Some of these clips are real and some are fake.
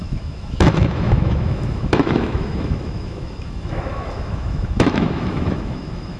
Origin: fake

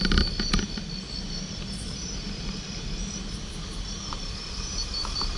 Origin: real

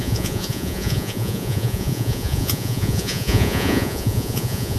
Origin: fake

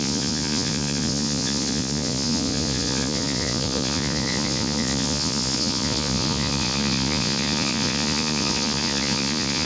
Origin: fake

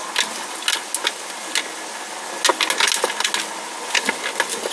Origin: real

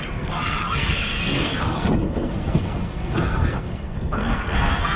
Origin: fake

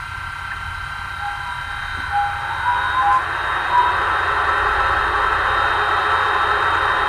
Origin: real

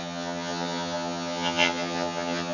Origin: fake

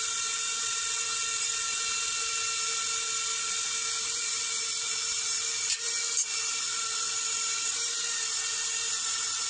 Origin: real